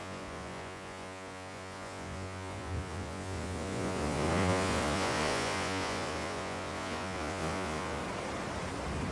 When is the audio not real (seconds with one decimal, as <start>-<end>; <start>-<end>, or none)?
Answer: 0.0-8.0